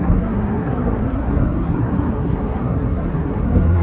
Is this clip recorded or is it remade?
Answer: remade